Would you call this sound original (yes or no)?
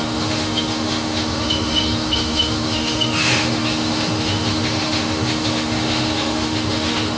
no